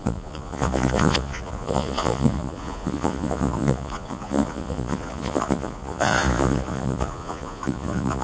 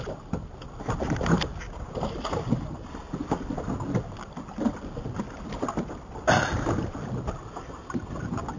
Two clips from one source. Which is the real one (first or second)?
second